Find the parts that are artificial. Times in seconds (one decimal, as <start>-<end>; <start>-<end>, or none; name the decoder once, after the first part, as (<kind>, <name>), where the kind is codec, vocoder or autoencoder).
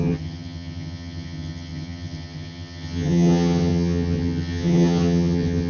0.0-5.7 (vocoder, HiFi-GAN)